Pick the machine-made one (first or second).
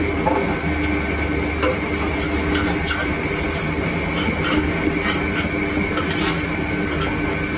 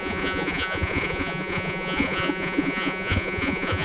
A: second